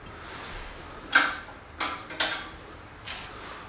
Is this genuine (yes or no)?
yes